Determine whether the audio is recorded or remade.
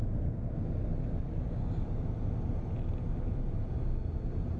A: recorded